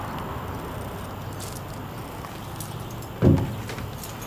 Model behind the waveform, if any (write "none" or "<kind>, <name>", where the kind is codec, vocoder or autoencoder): none